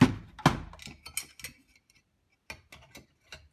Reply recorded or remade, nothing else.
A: recorded